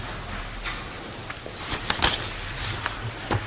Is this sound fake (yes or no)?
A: no